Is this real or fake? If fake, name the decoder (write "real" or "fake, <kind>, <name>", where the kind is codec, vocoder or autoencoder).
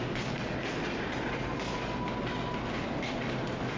real